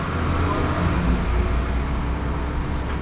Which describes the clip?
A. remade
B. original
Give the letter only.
B